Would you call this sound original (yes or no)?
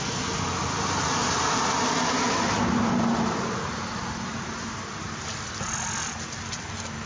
yes